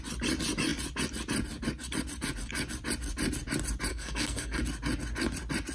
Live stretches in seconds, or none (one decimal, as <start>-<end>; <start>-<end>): 0.0-3.9; 4.6-5.7